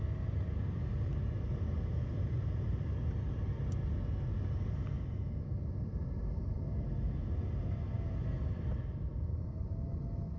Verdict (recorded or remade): recorded